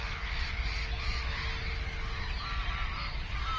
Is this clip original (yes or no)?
yes